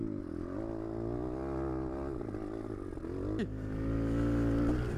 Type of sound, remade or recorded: recorded